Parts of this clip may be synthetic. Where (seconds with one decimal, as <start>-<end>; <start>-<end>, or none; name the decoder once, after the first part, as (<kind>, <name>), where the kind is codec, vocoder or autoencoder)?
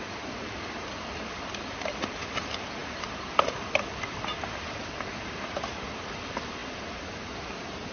none